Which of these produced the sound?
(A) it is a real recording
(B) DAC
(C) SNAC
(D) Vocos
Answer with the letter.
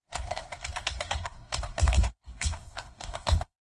C